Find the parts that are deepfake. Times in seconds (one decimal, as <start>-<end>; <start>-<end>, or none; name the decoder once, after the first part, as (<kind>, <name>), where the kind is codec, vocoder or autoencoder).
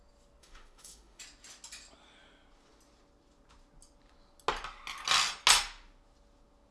0.4-1.2 (autoencoder, DAC-VAE)